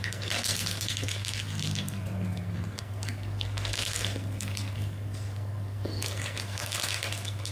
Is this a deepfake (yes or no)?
yes